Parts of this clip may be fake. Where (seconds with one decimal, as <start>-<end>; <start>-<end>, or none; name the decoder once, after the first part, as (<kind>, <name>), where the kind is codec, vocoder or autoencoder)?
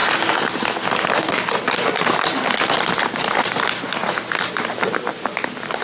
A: none